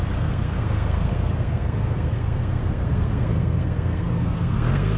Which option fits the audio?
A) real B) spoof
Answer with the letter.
B